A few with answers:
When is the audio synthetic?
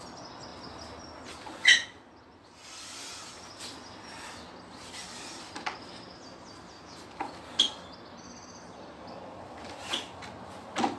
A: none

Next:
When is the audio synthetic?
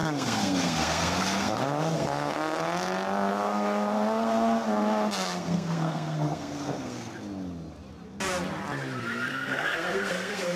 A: 0.0-2.6 (codec, SNAC); 3.3-7.1; 9.3-10.6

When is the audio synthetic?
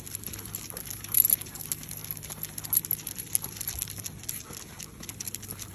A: none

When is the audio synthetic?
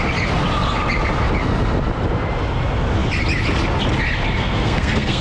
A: 4.4-5.2 (codec, SNAC)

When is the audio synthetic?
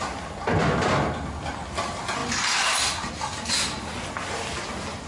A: none